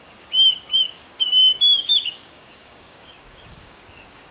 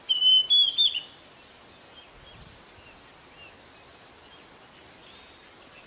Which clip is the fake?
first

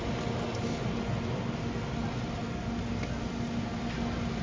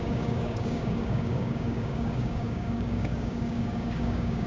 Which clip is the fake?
second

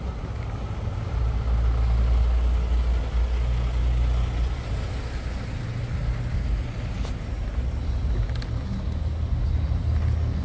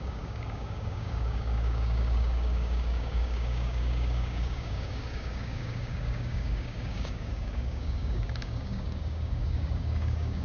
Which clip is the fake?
second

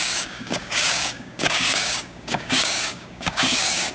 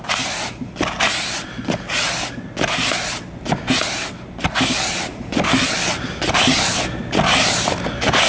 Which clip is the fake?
first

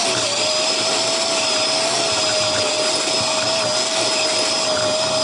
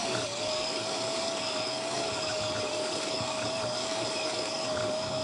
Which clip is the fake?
second